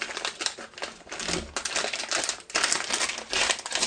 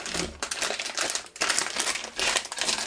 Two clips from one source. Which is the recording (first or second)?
first